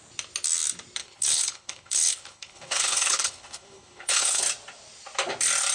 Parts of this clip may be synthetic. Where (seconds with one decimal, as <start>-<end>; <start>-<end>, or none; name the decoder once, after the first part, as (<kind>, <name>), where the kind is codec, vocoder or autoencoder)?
1.0-4.4 (codec, HILCodec)